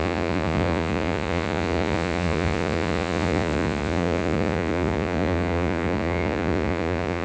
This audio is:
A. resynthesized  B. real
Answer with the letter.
A